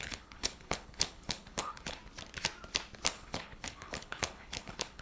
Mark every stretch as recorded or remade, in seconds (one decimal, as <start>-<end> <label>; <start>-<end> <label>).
0.0-2.0 remade; 2.0-3.1 recorded; 3.1-5.0 remade

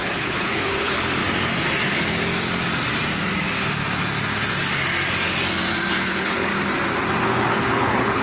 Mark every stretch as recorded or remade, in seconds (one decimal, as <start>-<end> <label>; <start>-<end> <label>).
0.0-1.2 remade; 1.2-5.9 recorded; 5.9-6.5 remade; 6.5-7.5 recorded; 7.5-8.2 remade